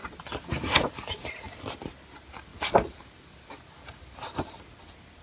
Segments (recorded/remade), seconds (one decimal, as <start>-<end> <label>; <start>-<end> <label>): 0.0-5.2 recorded